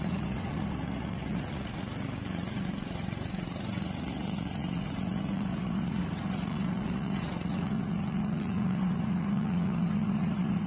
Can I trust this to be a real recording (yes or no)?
no